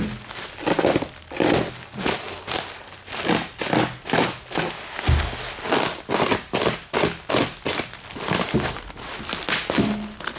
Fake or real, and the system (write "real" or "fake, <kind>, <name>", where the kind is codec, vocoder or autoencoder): real